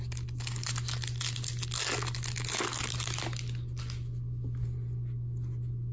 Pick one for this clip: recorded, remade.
recorded